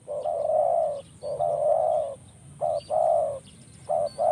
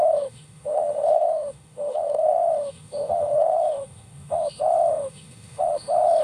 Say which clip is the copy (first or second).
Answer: second